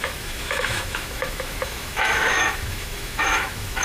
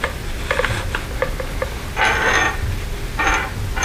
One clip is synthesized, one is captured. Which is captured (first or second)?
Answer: second